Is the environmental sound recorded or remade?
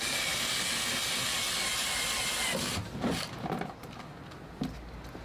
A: recorded